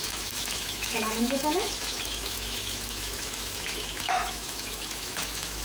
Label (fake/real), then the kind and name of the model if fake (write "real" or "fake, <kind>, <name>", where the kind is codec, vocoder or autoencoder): fake, autoencoder, DAC-VAE